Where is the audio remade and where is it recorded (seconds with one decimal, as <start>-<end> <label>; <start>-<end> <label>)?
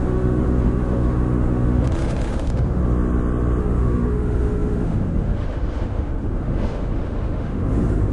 0.0-2.8 remade; 2.8-3.6 recorded; 3.6-8.1 remade